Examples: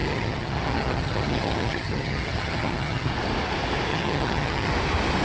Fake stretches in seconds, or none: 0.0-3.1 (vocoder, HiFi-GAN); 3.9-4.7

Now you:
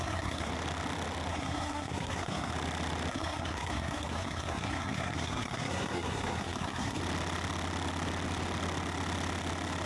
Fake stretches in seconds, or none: 0.0-0.5 (codec, SNAC); 1.3-2.5; 3.1-7.0